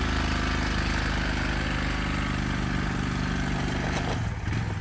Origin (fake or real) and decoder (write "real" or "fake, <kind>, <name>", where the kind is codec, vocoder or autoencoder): real